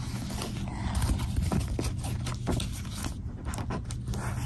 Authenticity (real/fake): real